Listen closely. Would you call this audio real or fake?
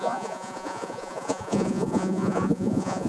fake